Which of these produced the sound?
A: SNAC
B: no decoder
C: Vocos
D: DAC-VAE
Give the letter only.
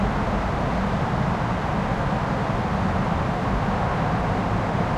B